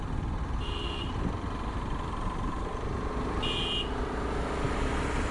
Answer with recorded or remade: recorded